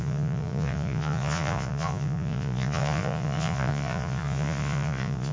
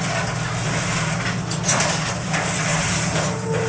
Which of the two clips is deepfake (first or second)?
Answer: first